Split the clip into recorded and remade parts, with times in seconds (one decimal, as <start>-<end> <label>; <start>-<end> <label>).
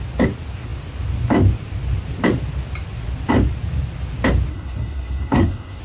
0.0-4.5 recorded; 4.5-5.8 remade